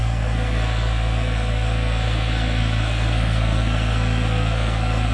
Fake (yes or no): yes